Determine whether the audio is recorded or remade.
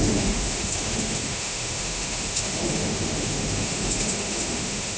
remade